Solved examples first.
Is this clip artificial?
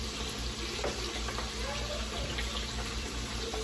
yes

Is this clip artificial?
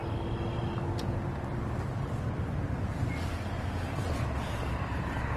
no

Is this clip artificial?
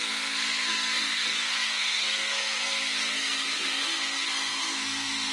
yes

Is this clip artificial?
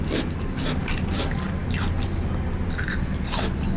no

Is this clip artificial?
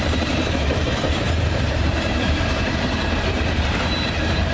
yes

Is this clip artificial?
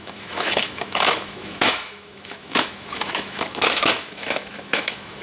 yes